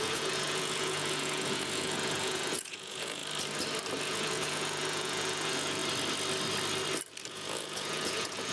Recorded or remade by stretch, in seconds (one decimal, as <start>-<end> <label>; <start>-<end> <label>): 0.0-3.2 remade; 3.2-4.0 recorded; 4.0-5.8 remade; 5.8-7.3 recorded; 7.3-8.5 remade

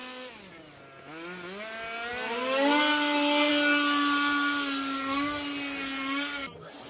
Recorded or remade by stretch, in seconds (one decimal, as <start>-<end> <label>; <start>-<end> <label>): 0.0-6.9 recorded

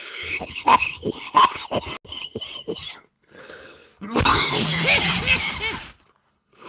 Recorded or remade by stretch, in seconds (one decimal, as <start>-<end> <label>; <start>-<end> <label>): 0.0-1.6 remade; 1.6-3.4 recorded; 3.4-3.9 remade; 3.9-6.3 recorded; 6.3-6.7 remade

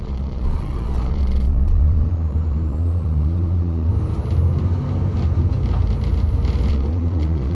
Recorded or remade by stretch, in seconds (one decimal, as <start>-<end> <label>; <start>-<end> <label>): 0.0-3.9 remade; 3.9-6.7 recorded; 6.7-7.5 remade

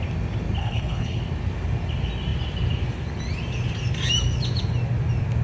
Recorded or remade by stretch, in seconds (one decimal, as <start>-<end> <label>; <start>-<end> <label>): 0.0-0.6 recorded; 0.6-1.2 remade; 1.2-5.4 recorded

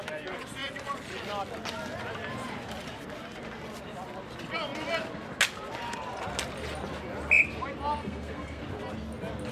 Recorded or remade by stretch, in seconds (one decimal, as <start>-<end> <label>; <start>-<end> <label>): 0.0-8.0 recorded; 8.0-8.6 remade; 8.6-9.5 recorded